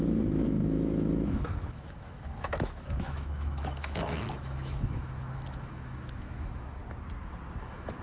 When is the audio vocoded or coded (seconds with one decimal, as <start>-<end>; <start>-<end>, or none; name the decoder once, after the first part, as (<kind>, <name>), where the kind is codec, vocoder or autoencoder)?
0.0-6.8 (autoencoder, DAC-VAE); 7.6-8.0